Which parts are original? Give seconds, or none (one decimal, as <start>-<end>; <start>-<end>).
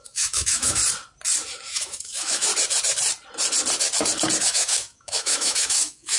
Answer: 0.8-1.7; 2.5-4.4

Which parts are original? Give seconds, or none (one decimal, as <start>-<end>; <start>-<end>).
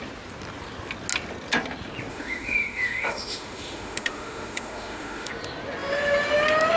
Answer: 0.0-2.1; 5.3-6.8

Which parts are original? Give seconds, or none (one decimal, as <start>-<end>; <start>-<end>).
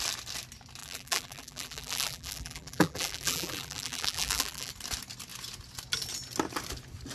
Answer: 0.0-0.8; 4.7-7.1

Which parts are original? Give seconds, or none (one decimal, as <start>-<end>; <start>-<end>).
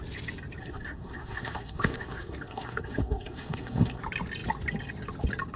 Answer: 0.0-0.6; 4.0-5.6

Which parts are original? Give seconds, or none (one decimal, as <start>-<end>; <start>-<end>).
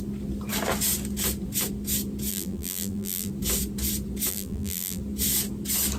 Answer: 0.0-2.3; 3.3-4.3; 5.0-6.0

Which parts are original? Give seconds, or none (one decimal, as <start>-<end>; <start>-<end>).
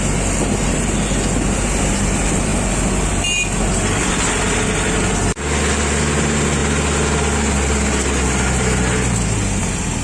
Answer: 0.0-10.0